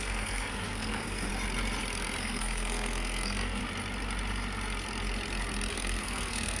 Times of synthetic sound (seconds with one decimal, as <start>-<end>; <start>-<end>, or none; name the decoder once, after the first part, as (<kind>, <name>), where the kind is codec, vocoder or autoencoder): 0.0-1.3 (codec, SNAC); 2.2-3.6; 5.7-6.6